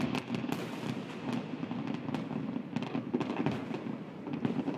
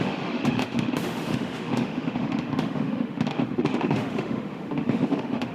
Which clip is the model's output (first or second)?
second